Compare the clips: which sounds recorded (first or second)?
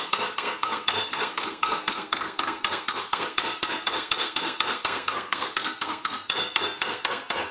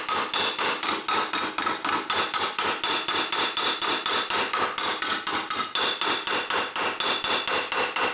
second